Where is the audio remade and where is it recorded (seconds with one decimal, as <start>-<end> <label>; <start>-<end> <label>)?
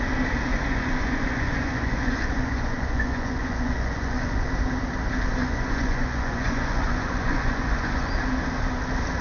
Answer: 0.0-0.5 recorded; 0.5-4.5 remade; 4.5-5.4 recorded; 5.4-8.1 remade; 8.1-9.2 recorded